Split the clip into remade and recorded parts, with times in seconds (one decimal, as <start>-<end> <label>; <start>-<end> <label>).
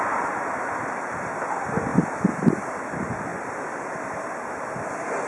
0.0-5.3 recorded